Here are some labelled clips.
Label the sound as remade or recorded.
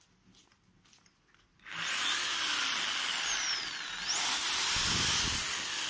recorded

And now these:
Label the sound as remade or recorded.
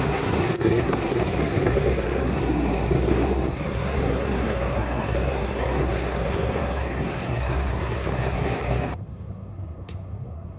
remade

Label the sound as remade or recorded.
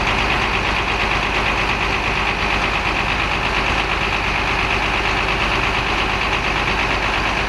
recorded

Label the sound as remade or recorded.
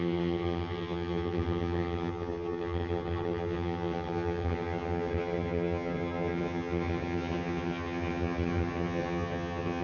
remade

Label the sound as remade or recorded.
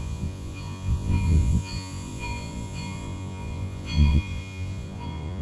remade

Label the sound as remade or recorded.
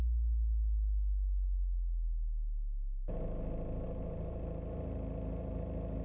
recorded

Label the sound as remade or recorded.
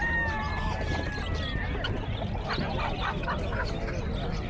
recorded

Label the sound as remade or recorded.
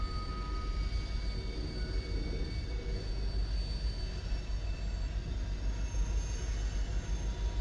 recorded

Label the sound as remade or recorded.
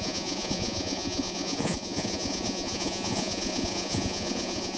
remade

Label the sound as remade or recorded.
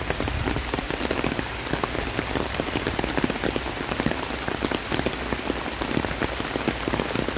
recorded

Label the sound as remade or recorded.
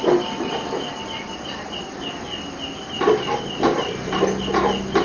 recorded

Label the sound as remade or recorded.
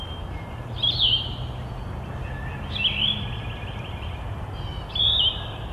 recorded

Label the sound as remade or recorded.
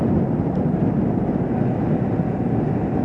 recorded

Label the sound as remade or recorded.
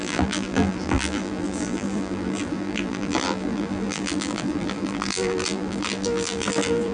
remade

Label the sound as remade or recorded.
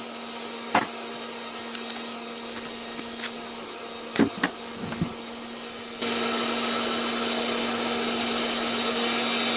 recorded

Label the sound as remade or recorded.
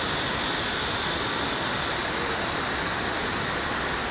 recorded